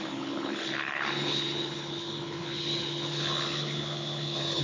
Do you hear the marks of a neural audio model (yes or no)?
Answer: yes